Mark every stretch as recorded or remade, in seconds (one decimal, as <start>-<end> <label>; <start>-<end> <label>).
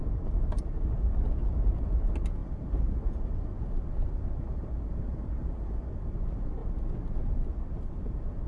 0.0-2.4 recorded; 2.4-5.9 remade; 5.9-8.5 recorded